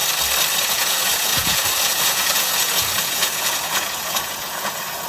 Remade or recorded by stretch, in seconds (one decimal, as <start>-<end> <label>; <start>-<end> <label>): 0.0-0.6 recorded; 0.6-5.1 remade